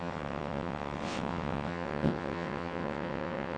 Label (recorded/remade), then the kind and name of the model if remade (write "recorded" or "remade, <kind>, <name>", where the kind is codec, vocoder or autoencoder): remade, vocoder, WaveNeXt